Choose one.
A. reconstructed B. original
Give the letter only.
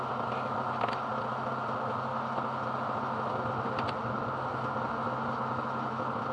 B